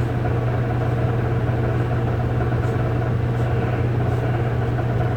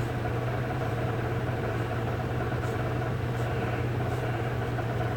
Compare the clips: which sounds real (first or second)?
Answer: first